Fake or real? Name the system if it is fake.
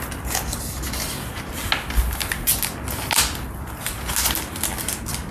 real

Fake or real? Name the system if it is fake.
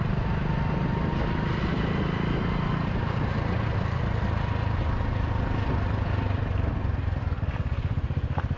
real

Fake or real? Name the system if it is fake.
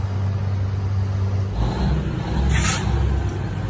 real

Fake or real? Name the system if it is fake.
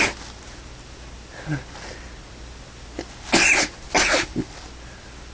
real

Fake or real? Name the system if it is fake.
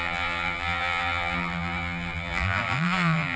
fake, vocoder, BigVGAN v2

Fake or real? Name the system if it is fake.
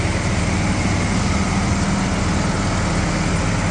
real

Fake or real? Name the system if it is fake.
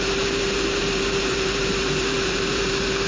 fake, vocoder, BigVGAN v2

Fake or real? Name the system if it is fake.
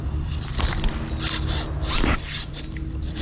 real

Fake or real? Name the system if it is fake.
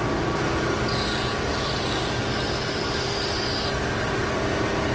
real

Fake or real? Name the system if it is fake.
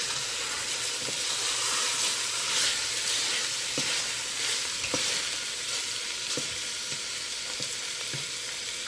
real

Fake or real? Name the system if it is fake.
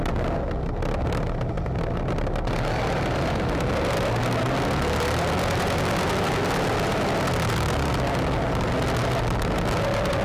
real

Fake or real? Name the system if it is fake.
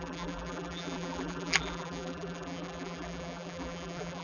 fake, vocoder, BigVGAN v2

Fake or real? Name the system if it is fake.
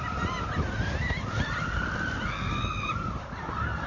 real